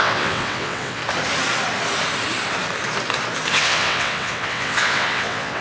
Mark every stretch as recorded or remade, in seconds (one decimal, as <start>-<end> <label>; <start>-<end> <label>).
0.0-1.0 remade; 1.0-3.5 recorded; 3.5-5.6 remade